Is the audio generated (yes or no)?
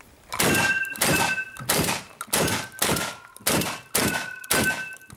no